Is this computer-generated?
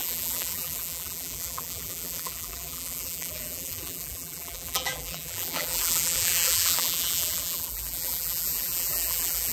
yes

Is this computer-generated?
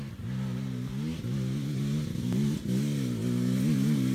no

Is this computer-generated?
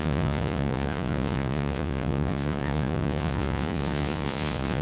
yes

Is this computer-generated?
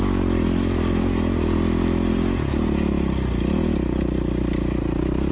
no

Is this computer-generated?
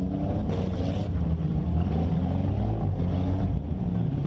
no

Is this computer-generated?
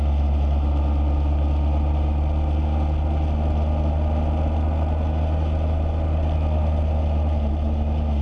no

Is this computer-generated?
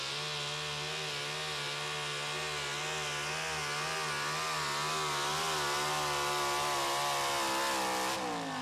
no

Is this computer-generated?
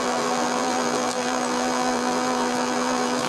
yes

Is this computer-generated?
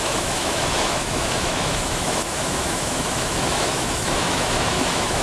yes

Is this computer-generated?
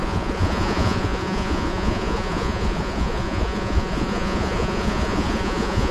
yes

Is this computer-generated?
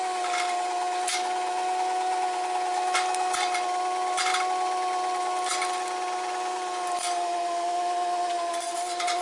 no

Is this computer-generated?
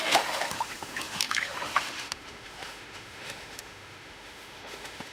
yes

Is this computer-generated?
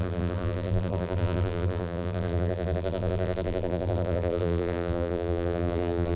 yes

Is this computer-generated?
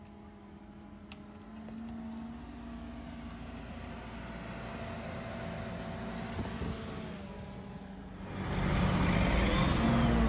no